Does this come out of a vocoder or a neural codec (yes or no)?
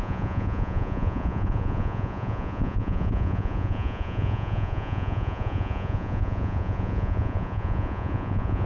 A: yes